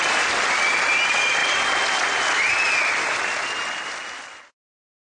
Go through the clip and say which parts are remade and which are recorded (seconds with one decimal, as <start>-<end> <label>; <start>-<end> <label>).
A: 0.0-1.4 remade; 1.4-4.5 recorded; 4.5-5.2 remade